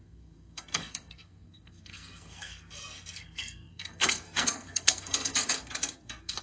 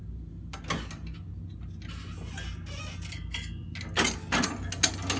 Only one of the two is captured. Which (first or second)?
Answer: second